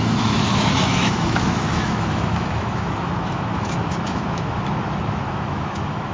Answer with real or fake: fake